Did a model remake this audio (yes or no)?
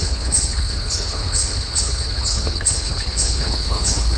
yes